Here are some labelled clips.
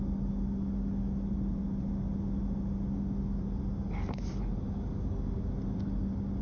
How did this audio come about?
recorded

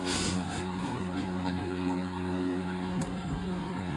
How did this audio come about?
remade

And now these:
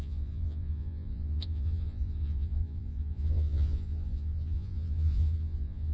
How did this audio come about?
remade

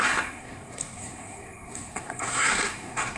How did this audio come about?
remade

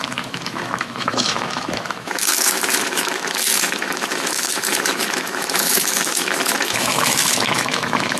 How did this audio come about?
remade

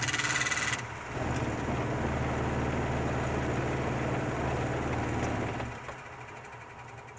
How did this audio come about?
recorded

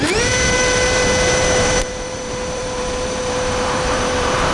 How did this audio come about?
remade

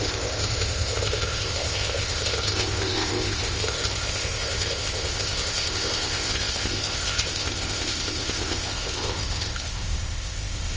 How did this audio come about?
remade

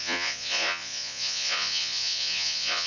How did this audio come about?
remade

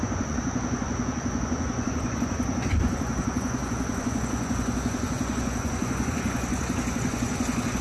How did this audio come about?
remade